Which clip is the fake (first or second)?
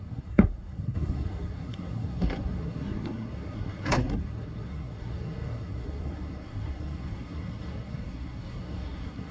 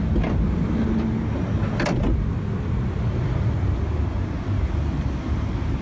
first